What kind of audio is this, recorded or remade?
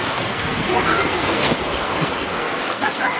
remade